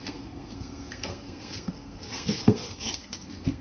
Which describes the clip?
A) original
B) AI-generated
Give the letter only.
B